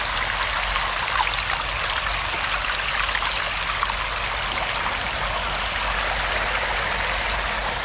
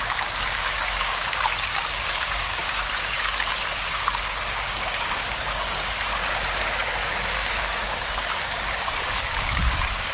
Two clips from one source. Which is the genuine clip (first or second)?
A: first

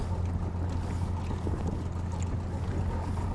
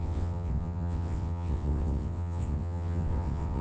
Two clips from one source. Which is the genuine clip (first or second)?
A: first